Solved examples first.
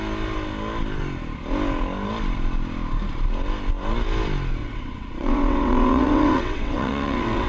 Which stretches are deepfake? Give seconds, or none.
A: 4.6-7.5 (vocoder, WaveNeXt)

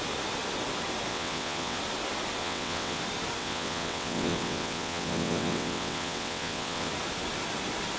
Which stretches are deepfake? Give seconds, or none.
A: 1.1-1.8 (vocoder, WaveNeXt); 2.4-3.0; 3.4-6.9

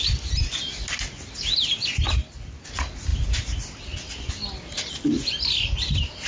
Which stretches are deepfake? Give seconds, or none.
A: none

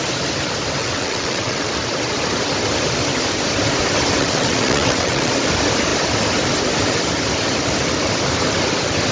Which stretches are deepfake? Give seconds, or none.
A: 0.8-1.7 (vocoder, WaveNeXt); 4.2-5.3

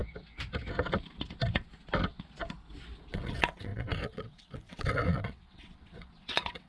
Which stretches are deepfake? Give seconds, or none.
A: 3.1-6.7 (vocoder, WaveNeXt)

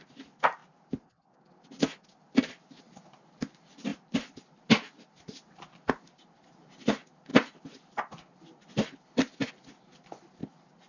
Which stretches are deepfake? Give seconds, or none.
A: none